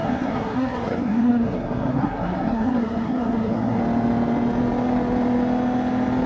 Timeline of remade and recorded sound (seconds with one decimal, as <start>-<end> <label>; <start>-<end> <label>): 0.0-3.8 remade; 3.8-6.3 recorded